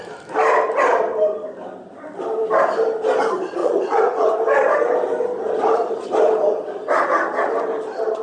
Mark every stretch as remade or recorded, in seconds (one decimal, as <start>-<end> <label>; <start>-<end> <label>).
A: 0.0-3.6 recorded; 3.6-4.3 remade; 4.3-8.2 recorded